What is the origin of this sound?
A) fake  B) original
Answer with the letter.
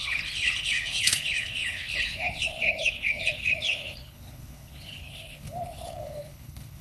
A